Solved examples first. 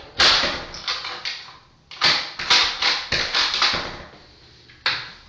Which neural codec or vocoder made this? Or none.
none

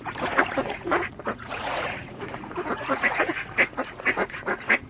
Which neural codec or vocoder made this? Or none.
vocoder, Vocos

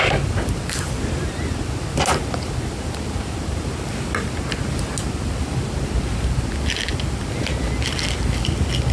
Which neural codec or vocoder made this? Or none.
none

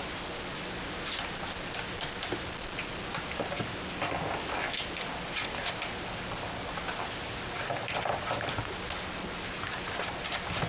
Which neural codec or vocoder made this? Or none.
none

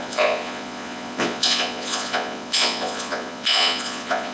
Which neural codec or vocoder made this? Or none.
vocoder, Vocos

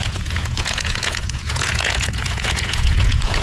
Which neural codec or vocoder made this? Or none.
vocoder, Vocos